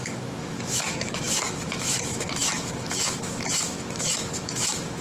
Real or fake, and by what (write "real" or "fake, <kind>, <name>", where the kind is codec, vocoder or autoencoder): fake, autoencoder, DAC-VAE